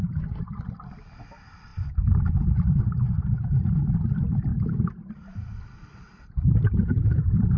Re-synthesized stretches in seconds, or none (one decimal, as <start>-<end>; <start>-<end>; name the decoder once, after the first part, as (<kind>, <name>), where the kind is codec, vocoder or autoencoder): 0.9-7.6 (vocoder, BigVGAN v2)